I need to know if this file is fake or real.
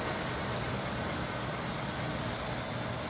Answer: real